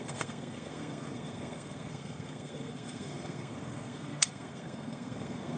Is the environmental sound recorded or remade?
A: remade